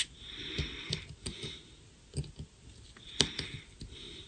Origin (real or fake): real